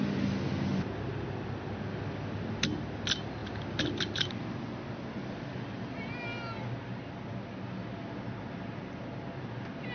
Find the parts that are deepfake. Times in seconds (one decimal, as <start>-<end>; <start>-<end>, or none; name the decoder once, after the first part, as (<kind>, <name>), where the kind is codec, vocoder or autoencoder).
none